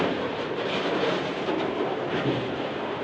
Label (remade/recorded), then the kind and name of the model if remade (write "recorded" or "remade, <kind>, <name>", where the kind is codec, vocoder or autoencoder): remade, vocoder, BigVGAN v2